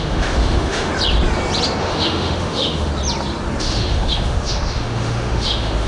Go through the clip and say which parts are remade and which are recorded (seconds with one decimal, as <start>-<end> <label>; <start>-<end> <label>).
0.0-0.9 remade; 0.9-1.8 recorded; 1.8-2.9 remade; 2.9-3.6 recorded; 3.6-5.9 remade